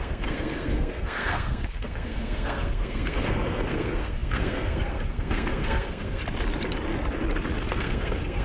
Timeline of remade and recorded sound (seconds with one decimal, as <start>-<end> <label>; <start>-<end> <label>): 0.0-6.2 remade; 6.2-7.7 recorded; 7.7-8.4 remade